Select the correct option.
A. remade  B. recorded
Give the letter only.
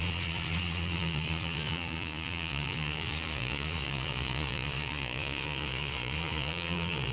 A